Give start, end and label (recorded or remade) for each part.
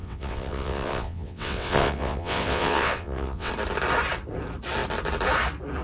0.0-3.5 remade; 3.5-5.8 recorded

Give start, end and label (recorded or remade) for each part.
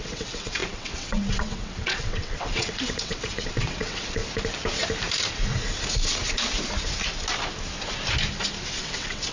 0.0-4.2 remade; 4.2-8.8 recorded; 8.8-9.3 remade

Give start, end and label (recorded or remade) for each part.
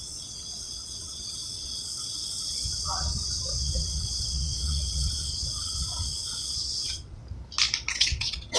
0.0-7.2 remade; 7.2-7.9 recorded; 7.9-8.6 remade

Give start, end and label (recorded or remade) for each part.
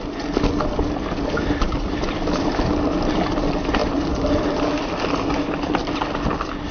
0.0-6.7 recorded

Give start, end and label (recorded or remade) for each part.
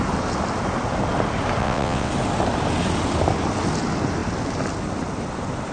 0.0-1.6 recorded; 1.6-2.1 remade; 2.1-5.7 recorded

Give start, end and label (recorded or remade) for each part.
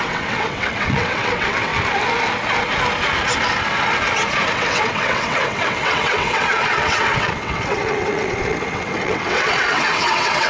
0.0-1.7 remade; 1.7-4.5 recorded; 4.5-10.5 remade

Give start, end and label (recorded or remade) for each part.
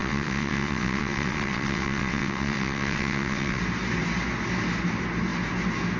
0.0-3.6 remade; 3.6-6.0 recorded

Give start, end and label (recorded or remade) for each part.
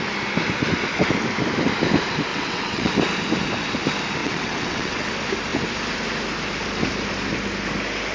0.0-2.3 recorded; 2.3-2.9 remade; 2.9-4.2 recorded; 4.2-5.1 remade; 5.1-8.1 recorded